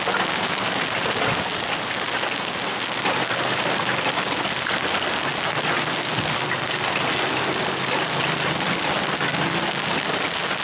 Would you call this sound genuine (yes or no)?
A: yes